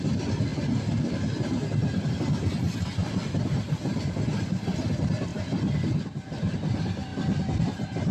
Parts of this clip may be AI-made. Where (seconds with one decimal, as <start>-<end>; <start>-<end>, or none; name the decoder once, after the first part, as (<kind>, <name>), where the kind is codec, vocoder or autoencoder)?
none